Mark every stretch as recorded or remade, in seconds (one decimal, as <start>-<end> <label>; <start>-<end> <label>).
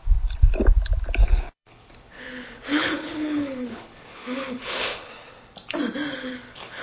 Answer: 0.0-1.2 recorded; 1.2-5.3 remade; 5.3-6.1 recorded; 6.1-6.8 remade